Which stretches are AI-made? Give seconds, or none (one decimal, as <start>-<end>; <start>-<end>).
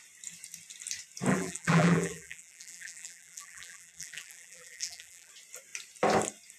1.3-5.3